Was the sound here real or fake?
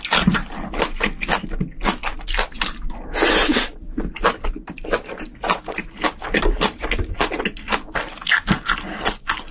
real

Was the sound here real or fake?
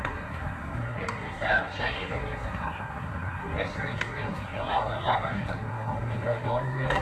fake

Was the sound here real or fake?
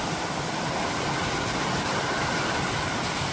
real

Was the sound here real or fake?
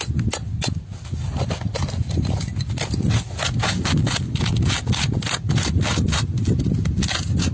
real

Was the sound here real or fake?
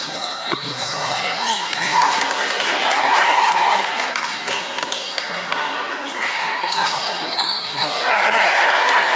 fake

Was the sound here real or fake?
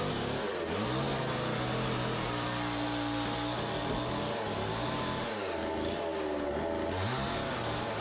real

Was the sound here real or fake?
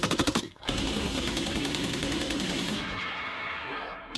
fake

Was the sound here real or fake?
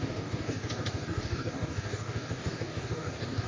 fake